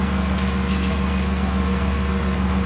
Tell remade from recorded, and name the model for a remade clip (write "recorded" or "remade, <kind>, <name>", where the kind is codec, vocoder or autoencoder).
remade, codec, SNAC